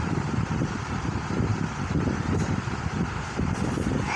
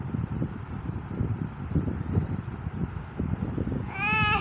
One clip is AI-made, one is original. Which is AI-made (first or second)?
first